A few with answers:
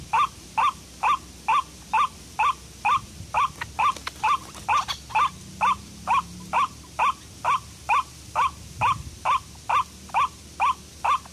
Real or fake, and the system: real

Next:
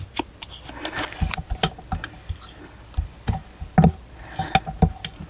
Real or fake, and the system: real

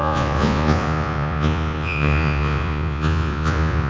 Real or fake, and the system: fake, vocoder, Vocos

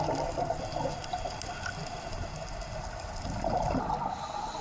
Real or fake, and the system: real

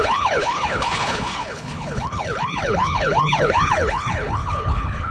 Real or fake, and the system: fake, codec, HILCodec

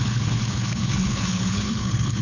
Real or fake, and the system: fake, codec, HILCodec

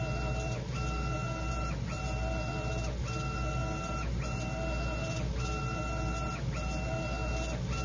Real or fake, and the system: real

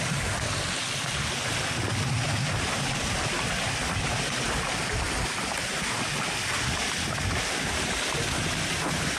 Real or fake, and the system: real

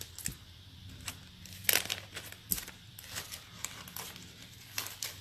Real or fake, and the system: real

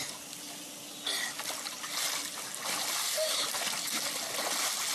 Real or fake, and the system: real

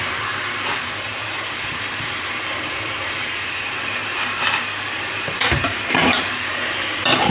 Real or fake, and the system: fake, vocoder, BigVGAN v2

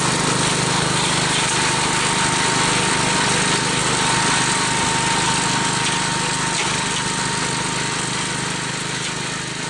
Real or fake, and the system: real